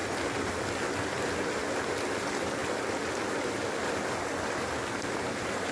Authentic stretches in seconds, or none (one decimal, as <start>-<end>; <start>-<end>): 0.0-5.7